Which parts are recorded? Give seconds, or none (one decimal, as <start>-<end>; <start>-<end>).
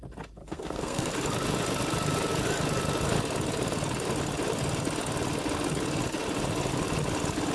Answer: 0.0-0.4; 1.1-7.5